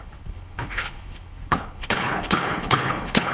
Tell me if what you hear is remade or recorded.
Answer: remade